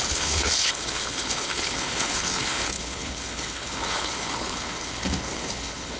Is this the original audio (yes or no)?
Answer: no